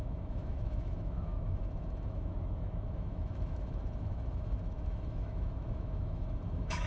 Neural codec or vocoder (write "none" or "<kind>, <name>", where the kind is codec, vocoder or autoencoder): autoencoder, DAC-VAE